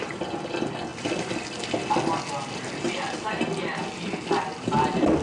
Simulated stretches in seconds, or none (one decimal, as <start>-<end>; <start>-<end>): 0.9-1.9